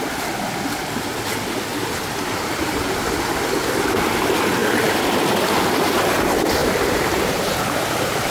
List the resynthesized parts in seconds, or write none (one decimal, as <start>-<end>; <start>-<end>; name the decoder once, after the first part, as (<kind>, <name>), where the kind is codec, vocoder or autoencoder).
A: 1.7-2.9 (vocoder, BigVGAN v2); 4.6-5.3; 6.6-8.3